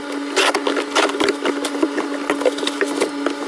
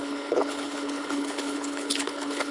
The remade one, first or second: second